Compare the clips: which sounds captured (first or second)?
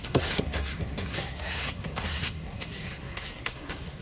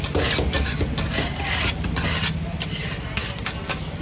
second